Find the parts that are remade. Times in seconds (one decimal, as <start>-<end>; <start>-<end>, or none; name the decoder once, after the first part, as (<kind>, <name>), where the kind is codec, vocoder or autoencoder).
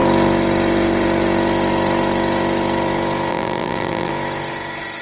3.3-4.1 (vocoder, BigVGAN v2)